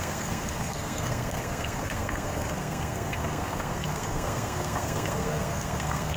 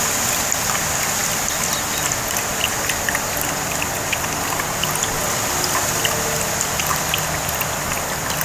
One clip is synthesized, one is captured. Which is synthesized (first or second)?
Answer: first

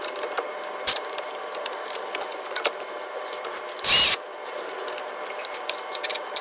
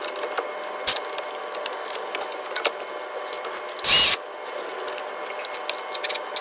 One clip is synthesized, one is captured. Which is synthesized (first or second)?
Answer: first